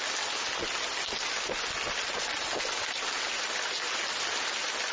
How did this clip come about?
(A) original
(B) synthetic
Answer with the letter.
A